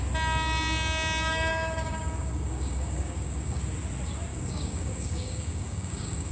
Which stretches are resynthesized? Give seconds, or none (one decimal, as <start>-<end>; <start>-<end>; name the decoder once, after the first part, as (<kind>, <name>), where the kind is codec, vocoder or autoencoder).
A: 1.5-3.6 (codec, DAC); 4.3-6.3